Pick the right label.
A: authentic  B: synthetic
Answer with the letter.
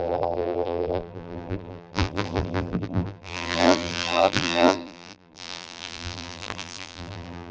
B